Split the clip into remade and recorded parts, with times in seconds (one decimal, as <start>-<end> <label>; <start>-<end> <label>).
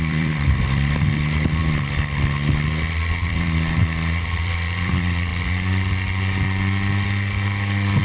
0.0-1.6 remade; 1.6-3.1 recorded; 3.1-5.3 remade; 5.3-8.0 recorded